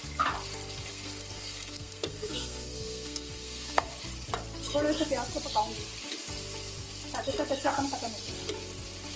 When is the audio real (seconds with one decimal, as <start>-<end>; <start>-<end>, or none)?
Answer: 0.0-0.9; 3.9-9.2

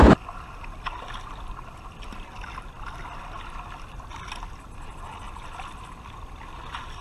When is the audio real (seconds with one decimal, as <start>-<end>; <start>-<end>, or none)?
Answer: 0.0-7.0

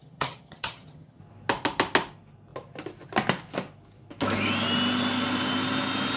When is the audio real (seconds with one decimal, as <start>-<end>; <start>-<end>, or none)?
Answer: 1.2-6.2

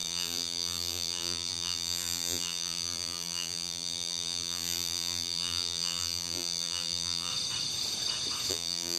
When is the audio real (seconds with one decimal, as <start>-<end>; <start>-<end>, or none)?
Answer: 7.3-8.5

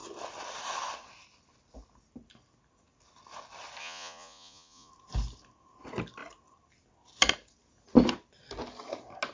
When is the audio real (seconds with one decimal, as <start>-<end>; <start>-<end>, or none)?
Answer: 0.0-3.8; 4.9-9.3